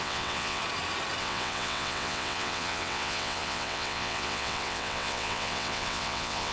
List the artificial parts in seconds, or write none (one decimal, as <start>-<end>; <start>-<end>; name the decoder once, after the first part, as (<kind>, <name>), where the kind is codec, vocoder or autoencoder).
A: 0.0-0.6 (vocoder, WaveNeXt); 1.2-6.5